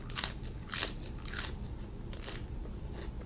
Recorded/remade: recorded